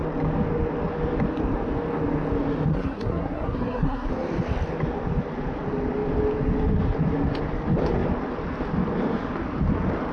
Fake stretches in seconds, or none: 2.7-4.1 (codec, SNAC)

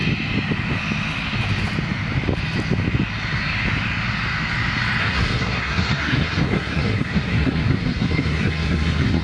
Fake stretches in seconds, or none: 5.0-9.2 (codec, SNAC)

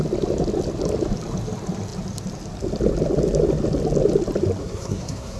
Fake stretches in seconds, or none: 4.6-5.4 (codec, SNAC)

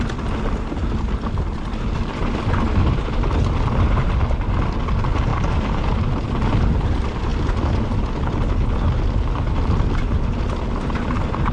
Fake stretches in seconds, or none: none

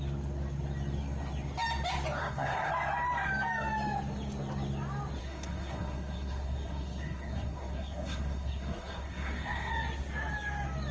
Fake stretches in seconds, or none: 2.2-2.7 (codec, SNAC); 5.2-9.7

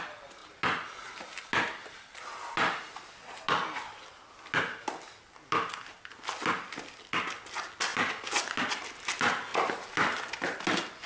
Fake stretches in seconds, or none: none

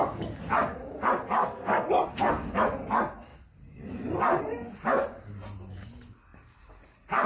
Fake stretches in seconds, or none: 1.4-1.9 (codec, SNAC)